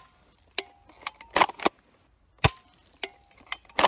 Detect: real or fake real